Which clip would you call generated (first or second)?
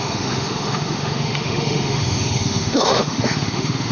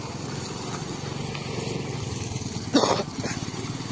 first